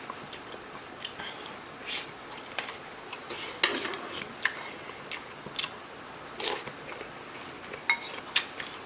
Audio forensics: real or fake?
real